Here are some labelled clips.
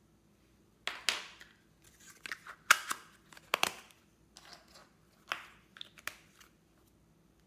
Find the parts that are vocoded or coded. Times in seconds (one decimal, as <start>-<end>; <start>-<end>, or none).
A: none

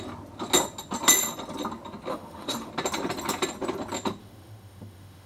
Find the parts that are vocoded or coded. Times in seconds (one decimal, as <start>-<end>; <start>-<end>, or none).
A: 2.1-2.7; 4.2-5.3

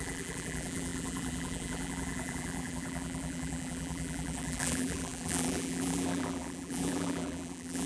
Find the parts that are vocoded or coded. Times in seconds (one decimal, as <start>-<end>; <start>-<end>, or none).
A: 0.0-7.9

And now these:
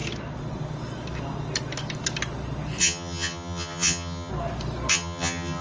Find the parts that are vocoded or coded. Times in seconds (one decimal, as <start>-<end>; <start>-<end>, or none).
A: 2.8-4.3; 4.9-5.6

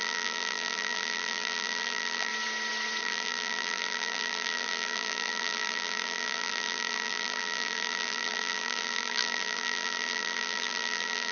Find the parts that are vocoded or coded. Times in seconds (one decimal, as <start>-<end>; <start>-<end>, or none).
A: 0.0-2.3; 3.0-11.3